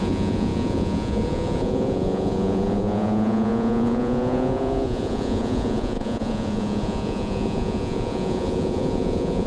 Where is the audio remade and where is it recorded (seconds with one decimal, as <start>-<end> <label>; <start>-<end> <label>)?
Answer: 0.0-9.5 remade